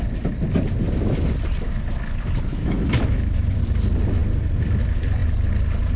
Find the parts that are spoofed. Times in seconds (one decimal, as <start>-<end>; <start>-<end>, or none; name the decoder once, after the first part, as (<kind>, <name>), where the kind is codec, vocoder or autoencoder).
2.5-3.6 (autoencoder, DAC-VAE)